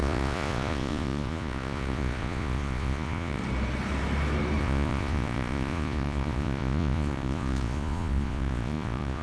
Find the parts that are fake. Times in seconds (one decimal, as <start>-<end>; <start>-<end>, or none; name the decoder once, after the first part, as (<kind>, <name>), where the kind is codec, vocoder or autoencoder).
0.0-3.4 (vocoder, Vocos); 4.6-9.2